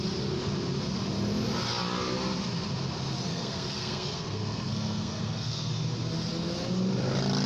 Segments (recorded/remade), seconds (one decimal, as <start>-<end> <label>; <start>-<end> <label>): 0.0-3.3 recorded; 3.3-5.7 remade; 5.7-7.5 recorded